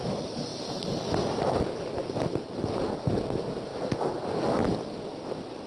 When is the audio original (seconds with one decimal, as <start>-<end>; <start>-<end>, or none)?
0.0-0.5; 1.1-5.7